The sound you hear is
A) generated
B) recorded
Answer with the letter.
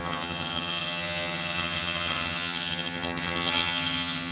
A